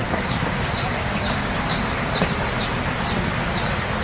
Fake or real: real